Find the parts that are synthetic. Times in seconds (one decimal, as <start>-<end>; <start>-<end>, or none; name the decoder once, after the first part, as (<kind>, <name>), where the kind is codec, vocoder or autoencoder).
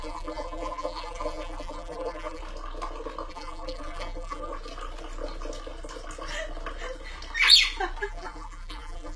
0.0-2.4 (vocoder, BigVGAN v2); 3.3-4.5; 8.0-9.2